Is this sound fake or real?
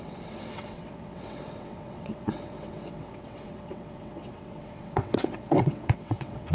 fake